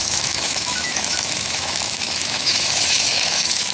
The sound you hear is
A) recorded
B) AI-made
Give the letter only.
B